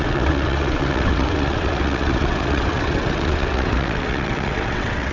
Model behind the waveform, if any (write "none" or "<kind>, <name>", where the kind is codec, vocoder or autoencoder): vocoder, WaveNeXt